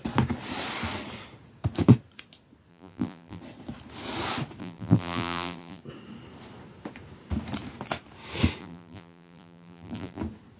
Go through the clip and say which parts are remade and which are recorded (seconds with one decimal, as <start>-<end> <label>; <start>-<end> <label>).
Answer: 0.0-2.7 recorded; 2.7-3.4 remade; 3.4-4.6 recorded; 4.6-5.8 remade; 5.8-8.6 recorded; 8.6-10.2 remade; 10.2-10.6 recorded